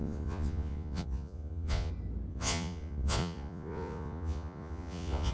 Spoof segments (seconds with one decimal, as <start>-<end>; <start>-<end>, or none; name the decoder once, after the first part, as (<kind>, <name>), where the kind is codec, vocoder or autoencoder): 0.0-1.9 (vocoder, Vocos); 2.3-5.3

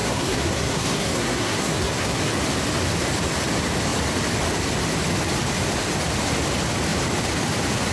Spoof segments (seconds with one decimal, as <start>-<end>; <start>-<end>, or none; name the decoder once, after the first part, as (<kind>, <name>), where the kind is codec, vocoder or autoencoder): 0.0-2.2 (codec, SNAC)

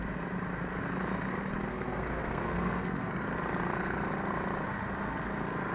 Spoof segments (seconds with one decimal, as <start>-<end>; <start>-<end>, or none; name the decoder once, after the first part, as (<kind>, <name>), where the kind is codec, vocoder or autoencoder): 1.7-3.1 (codec, SNAC)

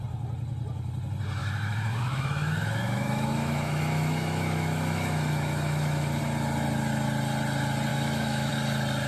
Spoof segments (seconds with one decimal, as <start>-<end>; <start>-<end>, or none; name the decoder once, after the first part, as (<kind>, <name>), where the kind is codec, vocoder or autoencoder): 1.4-6.2 (autoencoder, DAC-VAE); 7.9-8.5